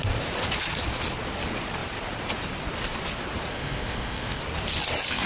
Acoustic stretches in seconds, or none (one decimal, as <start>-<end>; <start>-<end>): 0.0-3.5; 4.4-5.3

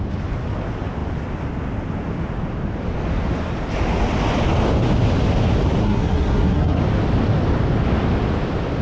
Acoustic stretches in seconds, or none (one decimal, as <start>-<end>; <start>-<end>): 0.0-5.8; 6.8-8.8

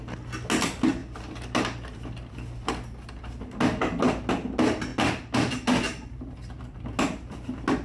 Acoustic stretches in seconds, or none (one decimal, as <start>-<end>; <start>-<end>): 0.0-7.8

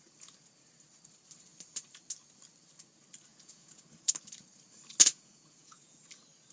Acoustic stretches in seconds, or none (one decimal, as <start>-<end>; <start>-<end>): 0.0-3.3; 4.1-5.0; 6.0-6.5

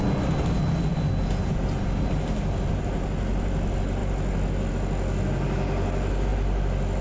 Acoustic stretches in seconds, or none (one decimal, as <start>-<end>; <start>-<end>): 0.0-7.0

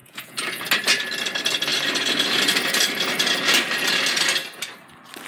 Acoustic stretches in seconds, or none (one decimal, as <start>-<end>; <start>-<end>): 0.7-5.3